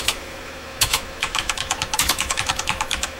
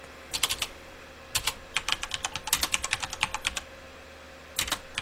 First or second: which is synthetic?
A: first